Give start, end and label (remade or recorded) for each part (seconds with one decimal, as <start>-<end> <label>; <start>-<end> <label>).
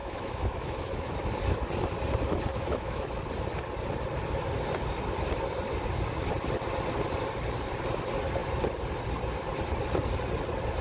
0.0-1.1 remade; 1.1-2.5 recorded; 2.5-3.2 remade; 3.2-10.8 recorded